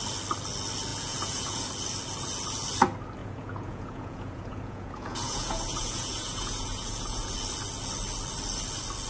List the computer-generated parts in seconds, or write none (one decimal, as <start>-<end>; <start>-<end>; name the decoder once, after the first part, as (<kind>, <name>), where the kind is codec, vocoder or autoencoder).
0.9-1.7 (vocoder, Vocos); 3.2-7.3